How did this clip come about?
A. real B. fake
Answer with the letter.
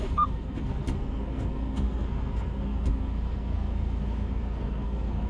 B